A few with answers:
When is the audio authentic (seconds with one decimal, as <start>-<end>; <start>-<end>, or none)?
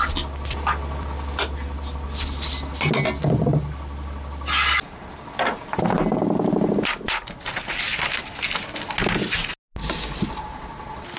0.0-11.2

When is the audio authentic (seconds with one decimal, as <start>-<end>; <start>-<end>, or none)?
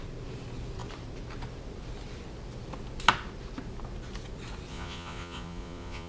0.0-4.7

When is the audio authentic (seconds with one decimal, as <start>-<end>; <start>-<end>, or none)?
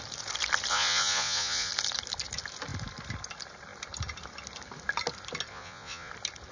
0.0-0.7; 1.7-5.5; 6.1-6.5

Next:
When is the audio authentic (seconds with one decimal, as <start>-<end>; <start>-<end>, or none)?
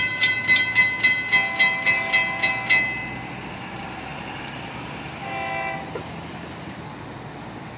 0.0-4.1; 5.2-7.8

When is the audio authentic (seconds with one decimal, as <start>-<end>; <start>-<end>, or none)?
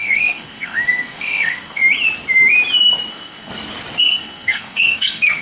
1.8-3.1; 3.5-4.0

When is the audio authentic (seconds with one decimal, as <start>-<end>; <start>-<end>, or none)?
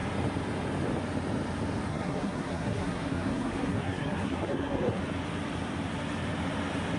0.0-1.9; 5.0-7.0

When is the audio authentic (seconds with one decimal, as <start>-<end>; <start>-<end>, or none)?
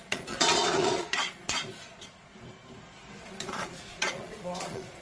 2.3-3.2